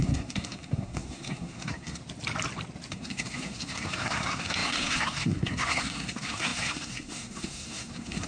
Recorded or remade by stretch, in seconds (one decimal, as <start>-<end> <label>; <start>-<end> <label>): 0.0-2.0 remade; 2.0-2.9 recorded; 2.9-8.3 remade